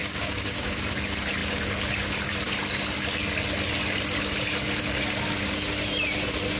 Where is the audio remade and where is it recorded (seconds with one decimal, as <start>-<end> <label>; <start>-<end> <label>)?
0.0-0.8 remade; 0.8-6.6 recorded